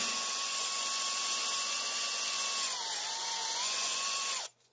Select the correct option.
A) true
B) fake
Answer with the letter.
B